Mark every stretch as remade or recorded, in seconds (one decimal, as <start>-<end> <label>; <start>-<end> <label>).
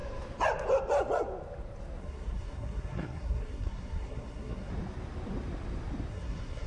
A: 0.0-2.0 recorded; 2.0-4.7 remade; 4.7-6.1 recorded; 6.1-6.7 remade